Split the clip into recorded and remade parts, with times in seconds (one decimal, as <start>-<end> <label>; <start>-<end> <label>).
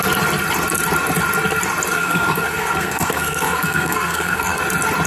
0.0-1.9 recorded; 1.9-4.6 remade; 4.6-5.1 recorded